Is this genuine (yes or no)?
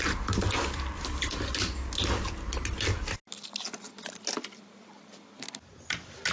yes